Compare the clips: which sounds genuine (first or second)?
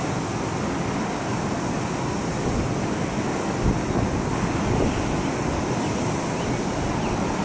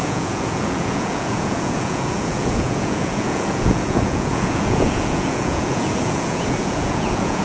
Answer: first